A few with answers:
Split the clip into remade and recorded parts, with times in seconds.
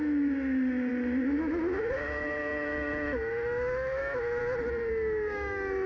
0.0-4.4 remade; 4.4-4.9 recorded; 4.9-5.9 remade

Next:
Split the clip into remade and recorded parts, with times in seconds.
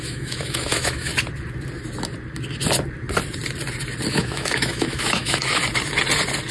0.0-1.1 remade; 1.1-4.1 recorded; 4.1-5.6 remade; 5.6-6.5 recorded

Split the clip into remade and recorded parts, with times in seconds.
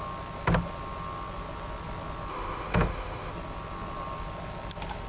0.0-2.3 recorded; 2.3-3.3 remade; 3.3-5.1 recorded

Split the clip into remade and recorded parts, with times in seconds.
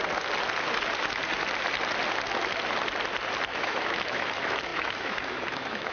0.0-3.5 recorded; 3.5-5.9 remade